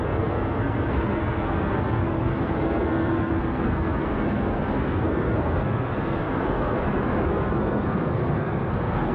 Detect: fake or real fake